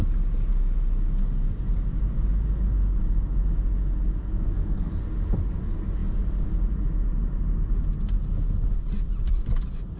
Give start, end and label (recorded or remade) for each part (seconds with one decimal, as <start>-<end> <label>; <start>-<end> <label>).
0.0-4.2 recorded; 4.2-4.9 remade; 4.9-10.0 recorded